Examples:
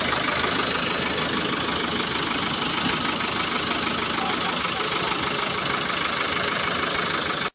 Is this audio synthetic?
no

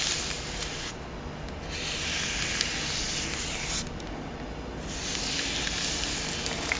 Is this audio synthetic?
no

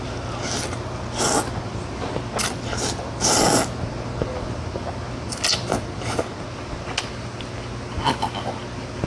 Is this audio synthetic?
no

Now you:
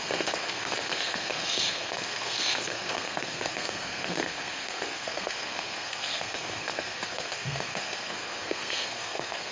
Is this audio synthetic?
yes